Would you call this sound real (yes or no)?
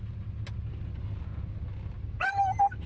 yes